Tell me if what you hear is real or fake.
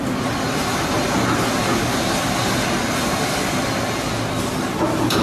real